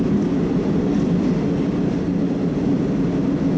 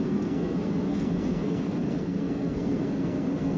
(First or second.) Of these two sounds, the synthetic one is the second